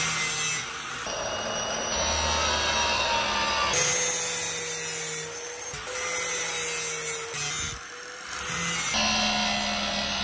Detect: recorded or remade recorded